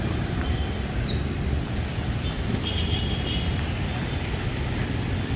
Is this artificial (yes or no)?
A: no